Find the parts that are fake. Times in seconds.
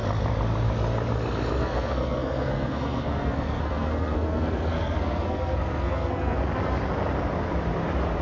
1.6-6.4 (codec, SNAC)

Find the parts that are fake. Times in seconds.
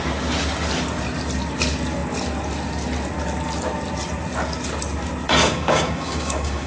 5.4-6.7 (codec, DAC)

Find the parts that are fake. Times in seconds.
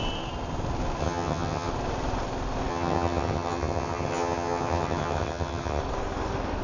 1.0-1.7 (vocoder, HiFi-GAN); 2.7-5.8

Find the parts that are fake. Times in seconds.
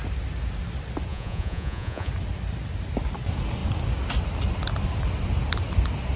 1.1-2.1 (vocoder, Vocos)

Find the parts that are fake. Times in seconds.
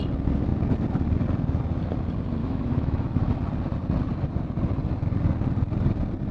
2.4-3.3 (autoencoder, DAC-VAE)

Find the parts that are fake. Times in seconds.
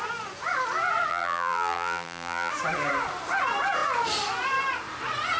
1.1-2.5 (vocoder, BigVGAN v2)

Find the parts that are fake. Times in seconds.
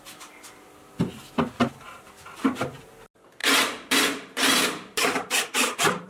1.1-2.1 (vocoder, BigVGAN v2); 3.4-6.1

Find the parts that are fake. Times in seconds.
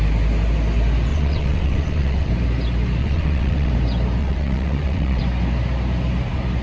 1.1-2.3 (vocoder, WaveNeXt); 3.0-3.7; 4.2-5.2